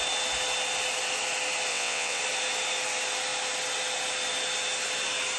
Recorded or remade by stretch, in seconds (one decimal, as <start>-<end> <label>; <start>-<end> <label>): 0.0-1.7 recorded; 1.7-2.2 remade; 2.2-5.4 recorded